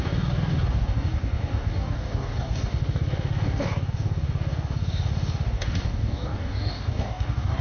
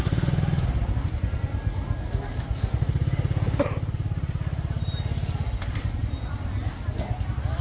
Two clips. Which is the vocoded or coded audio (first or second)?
first